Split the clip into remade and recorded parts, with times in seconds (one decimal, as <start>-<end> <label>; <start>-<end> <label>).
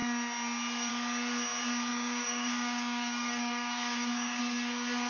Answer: 0.0-1.9 recorded; 1.9-4.4 remade; 4.4-5.1 recorded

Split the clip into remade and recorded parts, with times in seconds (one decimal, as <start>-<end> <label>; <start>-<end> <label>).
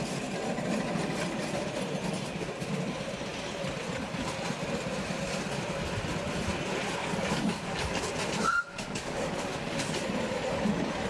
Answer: 0.0-7.0 recorded; 7.0-8.0 remade; 8.0-8.7 recorded; 8.7-9.9 remade; 9.9-11.1 recorded